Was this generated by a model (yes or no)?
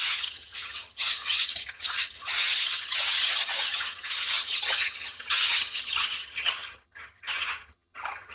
yes